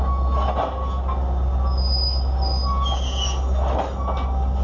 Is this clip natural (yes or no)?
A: yes